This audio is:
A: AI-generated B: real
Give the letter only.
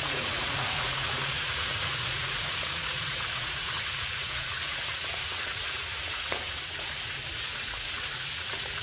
A